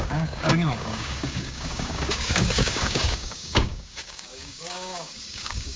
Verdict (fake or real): fake